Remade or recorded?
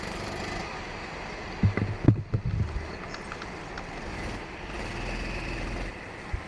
recorded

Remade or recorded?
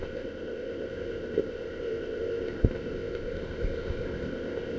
remade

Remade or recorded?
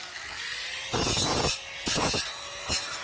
recorded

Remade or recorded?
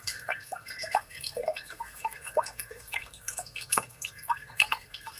remade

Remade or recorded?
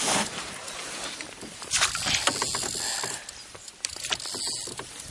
recorded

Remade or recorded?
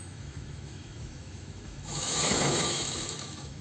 remade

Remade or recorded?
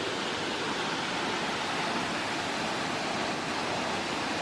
recorded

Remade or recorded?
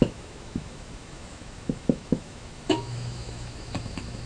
remade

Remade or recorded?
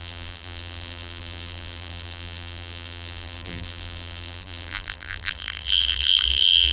remade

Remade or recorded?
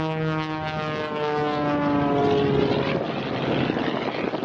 recorded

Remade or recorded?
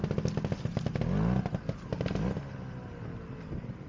recorded